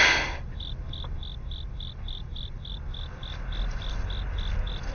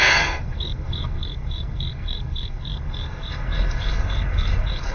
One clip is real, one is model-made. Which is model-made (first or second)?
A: second